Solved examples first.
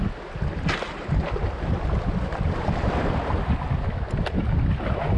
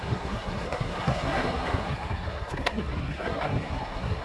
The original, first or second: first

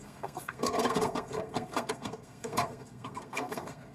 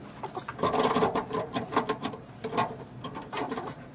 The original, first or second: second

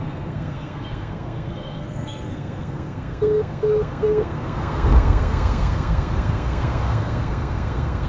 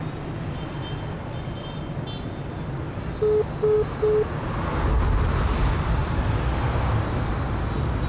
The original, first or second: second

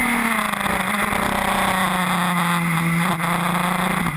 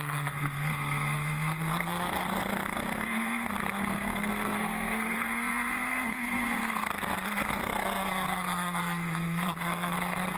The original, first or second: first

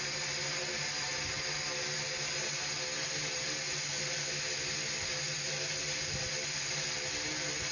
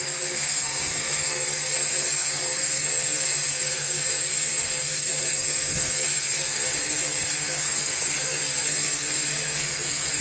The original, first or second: first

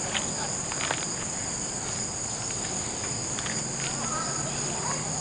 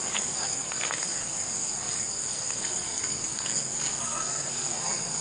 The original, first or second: first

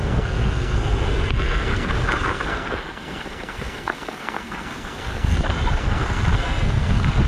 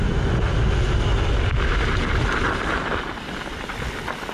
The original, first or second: second